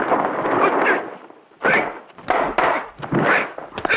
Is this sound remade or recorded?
recorded